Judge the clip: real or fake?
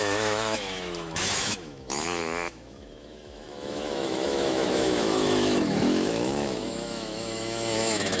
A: fake